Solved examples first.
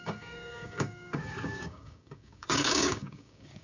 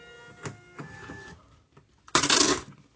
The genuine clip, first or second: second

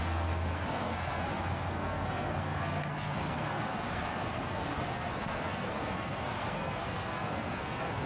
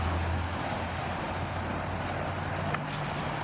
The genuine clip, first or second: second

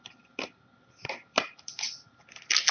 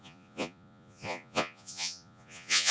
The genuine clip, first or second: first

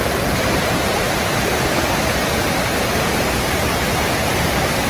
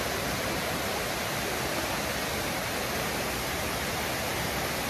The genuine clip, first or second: second